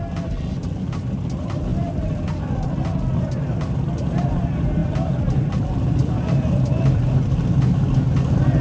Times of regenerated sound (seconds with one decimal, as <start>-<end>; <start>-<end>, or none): none